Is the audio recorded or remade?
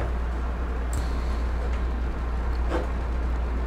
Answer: recorded